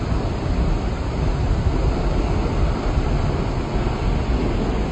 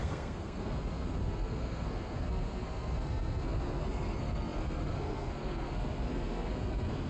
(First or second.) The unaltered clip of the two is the first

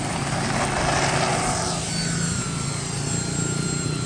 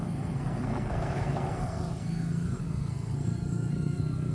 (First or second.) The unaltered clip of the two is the first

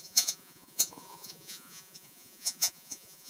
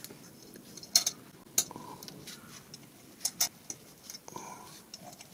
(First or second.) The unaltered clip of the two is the second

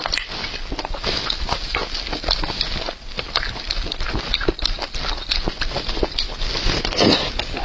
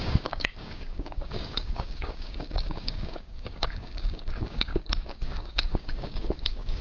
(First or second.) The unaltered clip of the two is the first